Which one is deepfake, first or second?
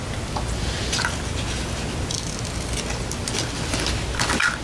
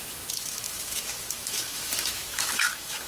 second